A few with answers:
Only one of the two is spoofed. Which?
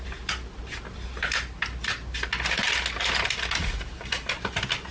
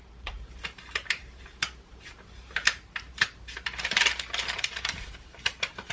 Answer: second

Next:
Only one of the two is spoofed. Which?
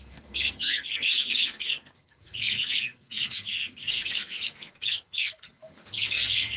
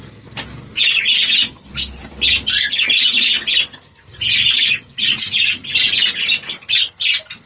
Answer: first